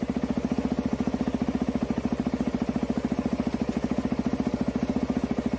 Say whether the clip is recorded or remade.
recorded